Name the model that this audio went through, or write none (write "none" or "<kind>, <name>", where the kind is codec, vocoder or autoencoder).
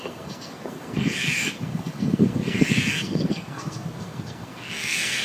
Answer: codec, SNAC